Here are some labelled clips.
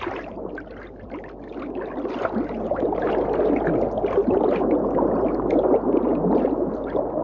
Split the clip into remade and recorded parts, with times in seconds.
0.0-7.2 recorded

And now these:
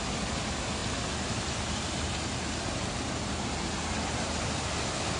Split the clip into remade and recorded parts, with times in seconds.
0.0-5.2 recorded